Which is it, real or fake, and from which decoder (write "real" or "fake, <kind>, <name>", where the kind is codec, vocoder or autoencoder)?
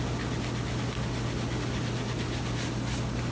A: real